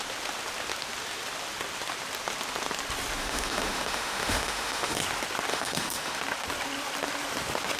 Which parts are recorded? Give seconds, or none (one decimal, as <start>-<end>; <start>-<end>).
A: 0.0-3.2; 5.0-5.5; 6.2-7.8